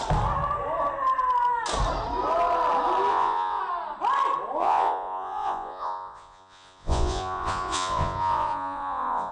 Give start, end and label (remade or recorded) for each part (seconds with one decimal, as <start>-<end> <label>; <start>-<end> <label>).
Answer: 0.0-3.1 recorded; 3.1-3.6 remade; 3.6-4.6 recorded; 4.6-9.3 remade